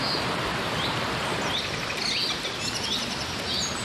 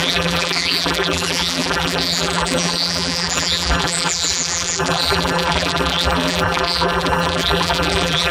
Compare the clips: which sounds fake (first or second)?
second